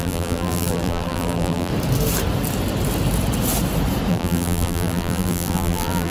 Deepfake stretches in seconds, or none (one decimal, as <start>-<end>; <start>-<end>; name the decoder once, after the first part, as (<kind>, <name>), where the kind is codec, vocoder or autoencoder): 0.0-1.7 (vocoder, BigVGAN v2); 4.1-6.1